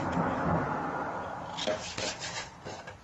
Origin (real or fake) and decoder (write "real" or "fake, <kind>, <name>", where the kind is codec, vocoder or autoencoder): real